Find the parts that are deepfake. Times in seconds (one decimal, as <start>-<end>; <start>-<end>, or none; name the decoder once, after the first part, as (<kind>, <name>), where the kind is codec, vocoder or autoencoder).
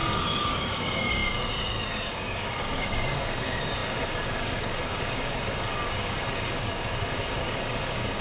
0.0-8.2 (codec, DAC)